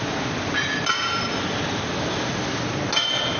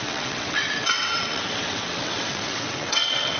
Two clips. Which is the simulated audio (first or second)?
second